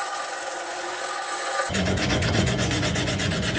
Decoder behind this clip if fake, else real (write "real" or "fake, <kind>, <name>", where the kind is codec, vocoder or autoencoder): fake, vocoder, Vocos